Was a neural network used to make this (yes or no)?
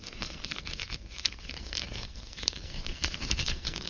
yes